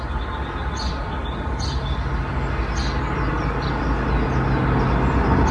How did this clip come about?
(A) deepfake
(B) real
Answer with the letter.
B